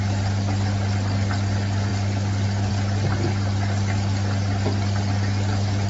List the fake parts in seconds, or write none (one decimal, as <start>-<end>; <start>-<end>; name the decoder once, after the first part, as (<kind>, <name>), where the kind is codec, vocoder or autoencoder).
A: none